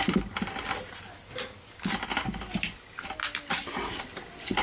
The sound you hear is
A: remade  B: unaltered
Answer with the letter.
B